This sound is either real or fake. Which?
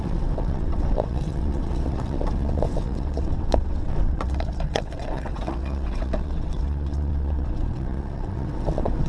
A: fake